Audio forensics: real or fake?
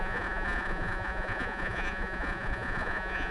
fake